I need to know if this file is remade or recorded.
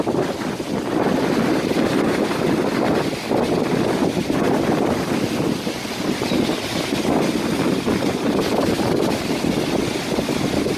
recorded